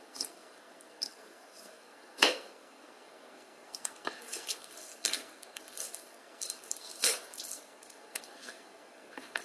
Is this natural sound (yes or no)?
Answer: no